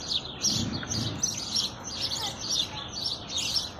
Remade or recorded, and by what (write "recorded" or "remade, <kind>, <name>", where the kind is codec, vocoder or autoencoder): recorded